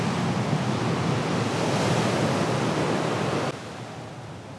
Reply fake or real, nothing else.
real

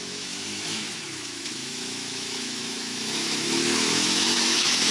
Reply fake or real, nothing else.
fake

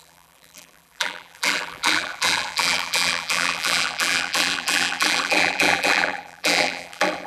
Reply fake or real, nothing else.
fake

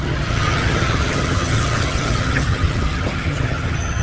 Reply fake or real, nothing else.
fake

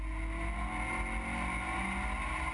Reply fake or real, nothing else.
real